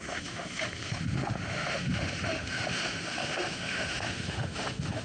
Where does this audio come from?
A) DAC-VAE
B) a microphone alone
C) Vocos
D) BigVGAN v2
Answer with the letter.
A